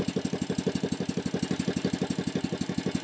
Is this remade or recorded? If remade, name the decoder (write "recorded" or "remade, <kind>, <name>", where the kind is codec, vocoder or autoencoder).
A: recorded